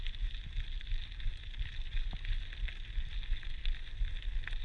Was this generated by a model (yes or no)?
no